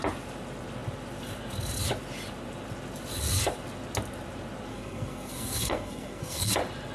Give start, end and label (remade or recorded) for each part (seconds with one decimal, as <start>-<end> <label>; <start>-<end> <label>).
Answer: 0.0-4.7 recorded; 4.7-6.5 remade; 6.5-6.9 recorded